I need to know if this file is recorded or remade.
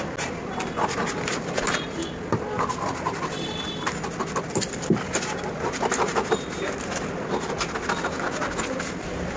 recorded